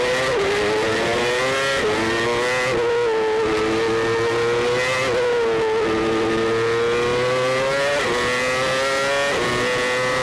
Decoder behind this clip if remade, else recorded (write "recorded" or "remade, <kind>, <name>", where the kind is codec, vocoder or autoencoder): recorded